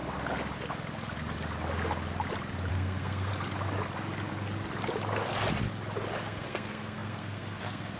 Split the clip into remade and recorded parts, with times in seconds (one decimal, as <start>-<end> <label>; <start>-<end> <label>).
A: 0.0-2.7 recorded; 2.7-3.3 remade; 3.3-6.2 recorded; 6.2-8.0 remade